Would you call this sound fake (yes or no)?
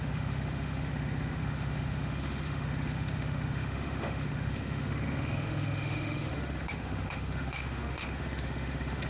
yes